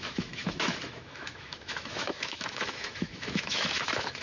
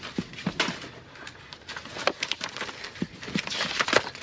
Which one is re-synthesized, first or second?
first